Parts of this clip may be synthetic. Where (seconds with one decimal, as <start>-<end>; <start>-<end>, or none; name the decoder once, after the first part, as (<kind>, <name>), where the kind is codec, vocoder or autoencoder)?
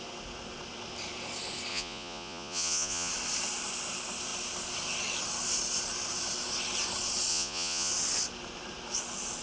1.7-3.1 (vocoder, Vocos); 7.3-7.9